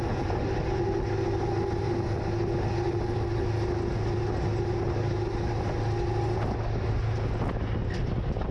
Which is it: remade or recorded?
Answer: recorded